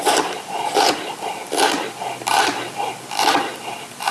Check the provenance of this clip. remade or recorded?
recorded